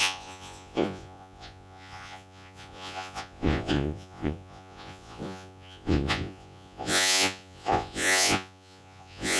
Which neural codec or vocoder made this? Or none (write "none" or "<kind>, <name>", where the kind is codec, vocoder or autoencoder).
vocoder, Vocos